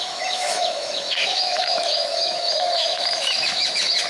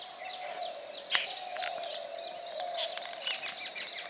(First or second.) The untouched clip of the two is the second